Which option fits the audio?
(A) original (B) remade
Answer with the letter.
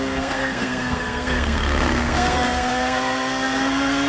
B